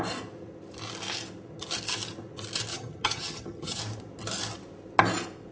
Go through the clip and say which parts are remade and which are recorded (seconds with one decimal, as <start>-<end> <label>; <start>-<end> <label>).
0.0-2.7 recorded; 2.7-3.8 remade; 3.8-5.5 recorded